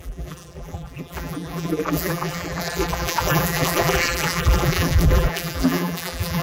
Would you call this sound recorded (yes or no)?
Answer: no